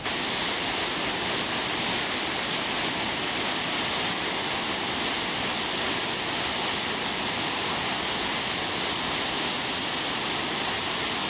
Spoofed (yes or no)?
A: no